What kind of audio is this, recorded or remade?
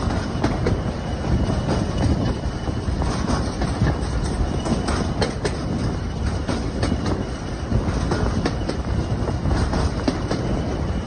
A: recorded